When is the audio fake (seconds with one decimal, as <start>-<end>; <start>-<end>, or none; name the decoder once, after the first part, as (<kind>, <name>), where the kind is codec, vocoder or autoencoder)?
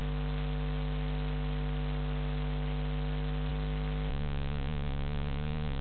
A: 4.1-5.8 (vocoder, Vocos)